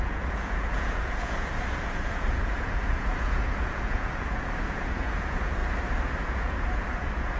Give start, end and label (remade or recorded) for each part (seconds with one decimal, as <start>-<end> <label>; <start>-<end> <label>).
0.0-5.6 remade; 5.6-6.2 recorded; 6.2-7.4 remade